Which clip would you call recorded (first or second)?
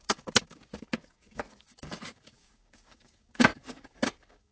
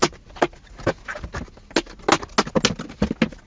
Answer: second